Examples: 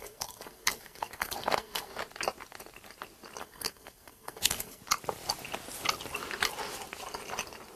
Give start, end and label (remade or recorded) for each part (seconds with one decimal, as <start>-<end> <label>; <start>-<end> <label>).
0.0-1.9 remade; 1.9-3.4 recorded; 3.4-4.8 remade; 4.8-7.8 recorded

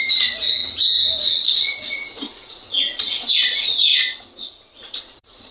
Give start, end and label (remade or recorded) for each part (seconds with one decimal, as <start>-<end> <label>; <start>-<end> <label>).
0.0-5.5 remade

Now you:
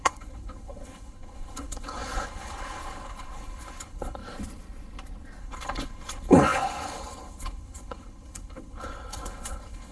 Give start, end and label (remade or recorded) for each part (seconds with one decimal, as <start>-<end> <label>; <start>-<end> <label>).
0.0-4.2 remade; 4.2-5.4 recorded; 5.4-9.9 remade

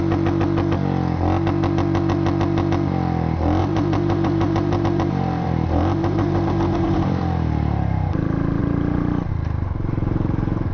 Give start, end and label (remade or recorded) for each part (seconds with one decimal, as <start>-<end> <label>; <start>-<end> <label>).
0.0-3.6 recorded; 3.6-8.1 remade; 8.1-8.6 recorded; 8.6-9.3 remade; 9.3-10.7 recorded